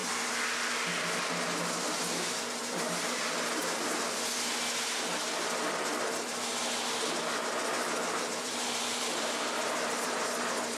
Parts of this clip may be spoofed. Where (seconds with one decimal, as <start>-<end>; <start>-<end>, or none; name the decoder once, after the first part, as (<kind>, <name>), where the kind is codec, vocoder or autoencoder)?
2.4-3.6 (vocoder, BigVGAN v2); 8.4-10.8